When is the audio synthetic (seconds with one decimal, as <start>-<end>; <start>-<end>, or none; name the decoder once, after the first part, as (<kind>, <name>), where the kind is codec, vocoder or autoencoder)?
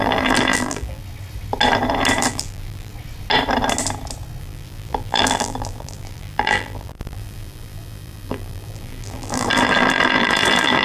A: 0.0-1.0 (vocoder, BigVGAN v2); 2.3-2.9; 4.4-10.8